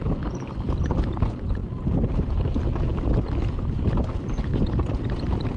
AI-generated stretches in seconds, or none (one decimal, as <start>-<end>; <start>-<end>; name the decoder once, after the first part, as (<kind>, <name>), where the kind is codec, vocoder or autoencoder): 0.5-2.9 (vocoder, BigVGAN v2); 3.7-5.6